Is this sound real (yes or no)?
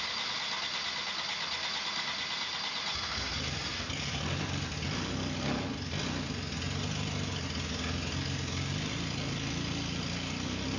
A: yes